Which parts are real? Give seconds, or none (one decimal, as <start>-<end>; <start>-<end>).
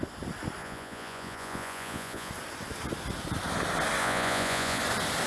0.0-0.6; 2.3-4.0; 4.8-5.3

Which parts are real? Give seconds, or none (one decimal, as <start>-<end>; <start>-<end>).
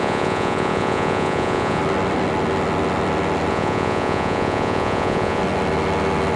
1.8-3.5; 5.4-6.4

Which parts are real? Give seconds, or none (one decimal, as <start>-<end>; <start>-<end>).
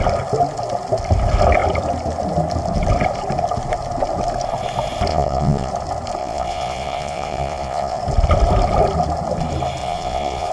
0.0-5.1; 5.7-6.2; 8.0-9.8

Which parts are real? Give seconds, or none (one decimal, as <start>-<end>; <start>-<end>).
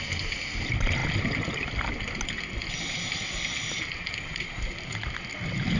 0.0-5.8